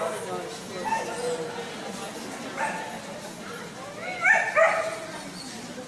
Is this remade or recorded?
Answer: recorded